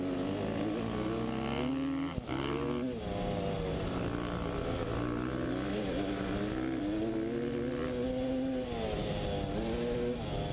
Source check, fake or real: real